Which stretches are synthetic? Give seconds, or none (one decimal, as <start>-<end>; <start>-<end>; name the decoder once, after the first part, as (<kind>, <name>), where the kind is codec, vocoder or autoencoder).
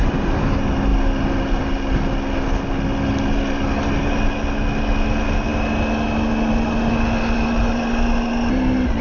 none